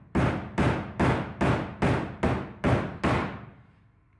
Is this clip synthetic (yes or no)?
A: no